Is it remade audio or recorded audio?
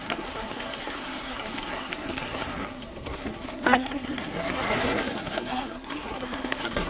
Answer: remade